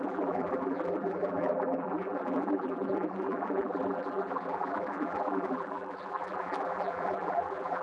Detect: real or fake fake